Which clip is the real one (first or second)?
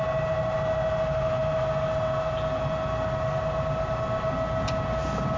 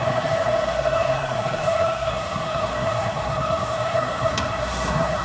first